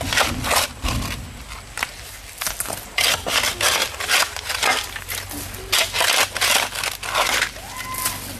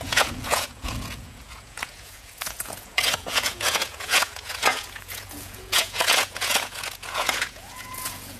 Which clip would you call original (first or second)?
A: first